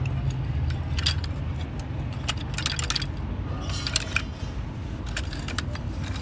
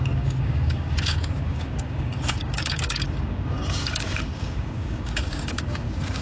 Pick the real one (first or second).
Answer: first